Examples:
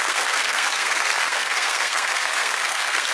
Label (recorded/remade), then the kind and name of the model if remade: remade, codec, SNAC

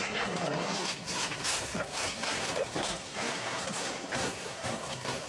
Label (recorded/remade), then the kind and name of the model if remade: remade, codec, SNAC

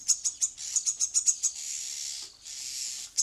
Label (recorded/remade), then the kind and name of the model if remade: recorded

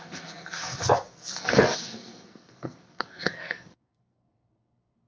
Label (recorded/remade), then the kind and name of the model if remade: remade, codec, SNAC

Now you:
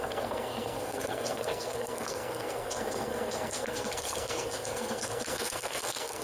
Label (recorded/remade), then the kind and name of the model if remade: remade, codec, SNAC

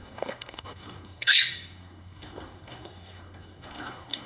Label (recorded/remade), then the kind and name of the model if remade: remade, codec, SNAC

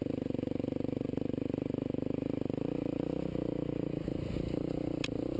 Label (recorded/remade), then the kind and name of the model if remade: recorded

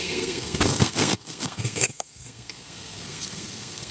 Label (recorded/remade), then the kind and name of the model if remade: remade, codec, SNAC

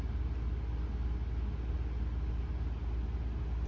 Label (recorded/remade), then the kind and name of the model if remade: recorded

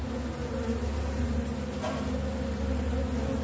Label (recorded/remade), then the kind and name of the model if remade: recorded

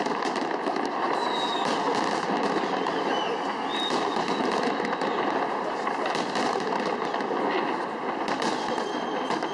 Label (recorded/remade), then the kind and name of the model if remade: recorded